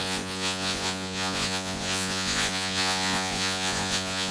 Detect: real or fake fake